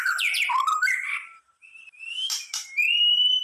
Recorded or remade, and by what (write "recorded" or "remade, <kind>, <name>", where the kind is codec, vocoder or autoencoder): remade, vocoder, BigVGAN v2